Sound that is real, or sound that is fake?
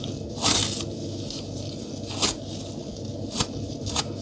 real